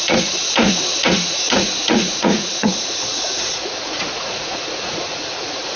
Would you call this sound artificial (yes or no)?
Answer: yes